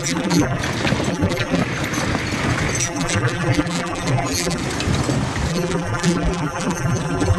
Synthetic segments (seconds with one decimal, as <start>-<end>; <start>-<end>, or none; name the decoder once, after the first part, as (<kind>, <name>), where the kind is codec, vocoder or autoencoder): 0.0-0.6 (vocoder, BigVGAN v2); 1.1-1.6; 2.8-4.6; 5.5-7.4